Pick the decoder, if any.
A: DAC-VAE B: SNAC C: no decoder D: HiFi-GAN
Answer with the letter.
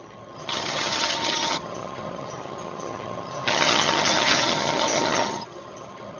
D